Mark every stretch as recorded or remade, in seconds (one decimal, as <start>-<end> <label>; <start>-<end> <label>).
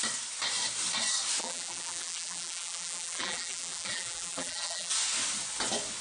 0.0-1.4 recorded; 1.4-4.9 remade; 4.9-6.0 recorded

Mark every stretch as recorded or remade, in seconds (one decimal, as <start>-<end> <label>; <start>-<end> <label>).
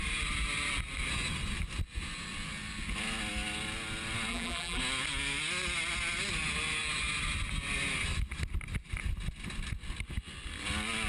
0.0-4.3 recorded; 4.3-4.8 remade; 4.8-11.1 recorded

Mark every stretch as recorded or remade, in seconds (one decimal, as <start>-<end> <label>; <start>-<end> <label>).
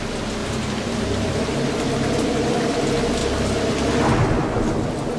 0.0-0.4 recorded; 0.4-1.3 remade; 1.3-5.2 recorded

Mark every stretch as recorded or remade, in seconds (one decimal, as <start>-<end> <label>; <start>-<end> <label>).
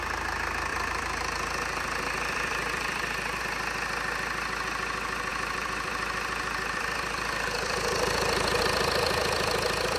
0.0-0.7 recorded; 0.7-3.4 remade; 3.4-5.3 recorded; 5.3-8.6 remade; 8.6-10.0 recorded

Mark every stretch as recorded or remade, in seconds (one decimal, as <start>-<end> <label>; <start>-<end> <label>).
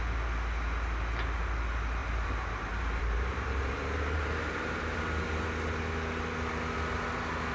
0.0-2.0 recorded; 2.0-5.0 remade; 5.0-7.5 recorded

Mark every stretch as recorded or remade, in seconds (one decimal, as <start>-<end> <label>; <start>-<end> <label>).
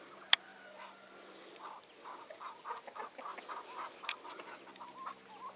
0.0-0.5 recorded; 0.5-2.5 remade; 2.5-5.6 recorded